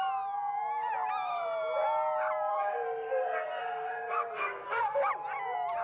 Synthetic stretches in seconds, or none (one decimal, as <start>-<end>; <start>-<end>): 2.5-5.0